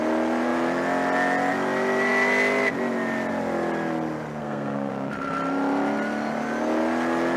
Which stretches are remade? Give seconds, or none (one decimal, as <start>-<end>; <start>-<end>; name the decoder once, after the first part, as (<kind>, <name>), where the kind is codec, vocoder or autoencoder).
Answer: 4.4-4.9 (codec, SNAC)